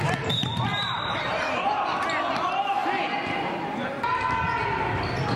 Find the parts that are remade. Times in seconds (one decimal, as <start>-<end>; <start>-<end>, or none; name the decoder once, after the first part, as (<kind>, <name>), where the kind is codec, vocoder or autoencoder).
0.7-1.8 (vocoder, BigVGAN v2)